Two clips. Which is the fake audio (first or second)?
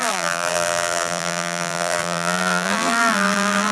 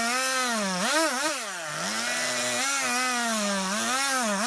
first